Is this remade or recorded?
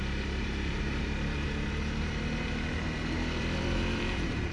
remade